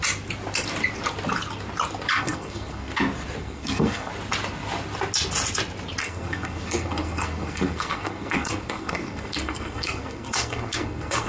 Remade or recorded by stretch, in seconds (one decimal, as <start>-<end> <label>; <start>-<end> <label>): 0.0-2.1 recorded; 2.1-3.0 remade; 3.0-3.4 recorded; 3.4-4.1 remade; 4.1-6.0 recorded; 6.0-11.3 remade